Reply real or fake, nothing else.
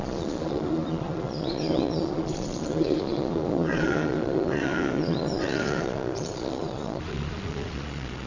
fake